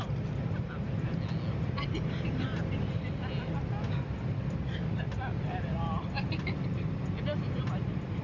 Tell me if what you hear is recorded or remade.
recorded